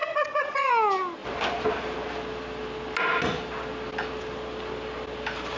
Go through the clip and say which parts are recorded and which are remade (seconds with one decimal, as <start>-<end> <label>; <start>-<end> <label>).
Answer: 0.0-0.7 remade; 0.7-5.6 recorded